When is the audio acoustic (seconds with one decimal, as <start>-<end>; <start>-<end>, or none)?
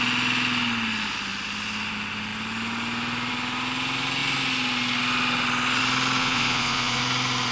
0.0-6.2; 7.0-7.5